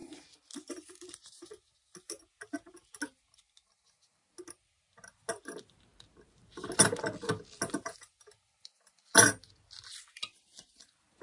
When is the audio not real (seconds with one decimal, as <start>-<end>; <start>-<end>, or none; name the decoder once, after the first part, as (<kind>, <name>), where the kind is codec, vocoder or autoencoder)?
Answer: none